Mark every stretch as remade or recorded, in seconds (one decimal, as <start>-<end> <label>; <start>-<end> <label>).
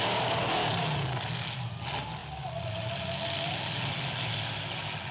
0.0-0.4 recorded; 0.4-1.5 remade; 1.5-5.1 recorded